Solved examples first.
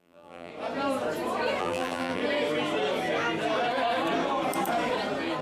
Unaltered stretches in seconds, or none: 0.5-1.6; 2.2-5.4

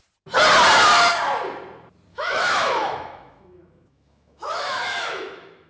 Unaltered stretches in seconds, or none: 0.0-2.1